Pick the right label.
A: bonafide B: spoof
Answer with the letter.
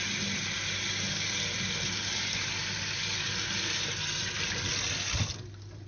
A